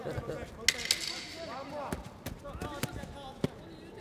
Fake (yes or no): no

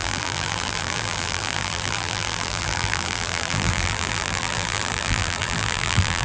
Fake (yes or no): yes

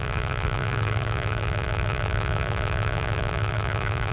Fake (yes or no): yes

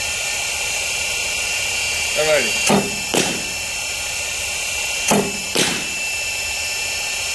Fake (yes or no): yes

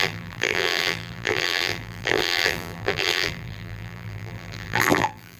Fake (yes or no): yes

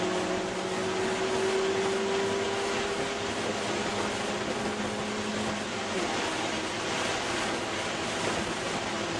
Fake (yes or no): no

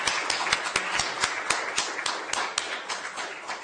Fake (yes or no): no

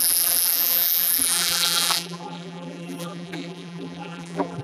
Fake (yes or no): yes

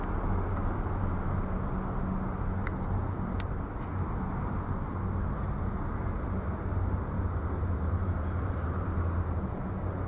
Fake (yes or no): no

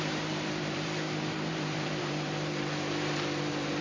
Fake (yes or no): yes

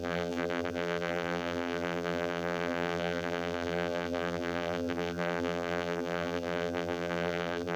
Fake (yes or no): yes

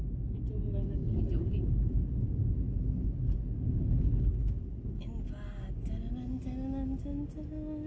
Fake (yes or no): no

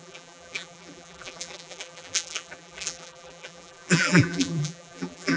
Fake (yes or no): yes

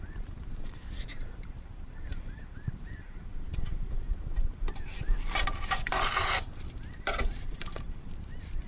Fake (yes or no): yes